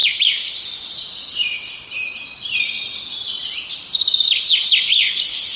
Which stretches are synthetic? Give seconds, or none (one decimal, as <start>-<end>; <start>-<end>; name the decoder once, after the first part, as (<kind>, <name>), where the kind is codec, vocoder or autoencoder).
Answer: 0.0-0.6 (vocoder, BigVGAN v2); 4.9-5.6